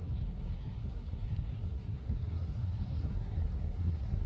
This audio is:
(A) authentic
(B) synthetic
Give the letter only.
B